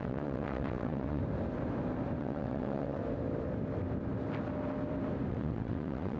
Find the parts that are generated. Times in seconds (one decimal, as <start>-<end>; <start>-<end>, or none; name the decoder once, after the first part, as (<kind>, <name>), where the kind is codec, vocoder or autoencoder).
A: 0.0-1.2 (vocoder, WaveNeXt); 2.2-3.0; 5.3-6.2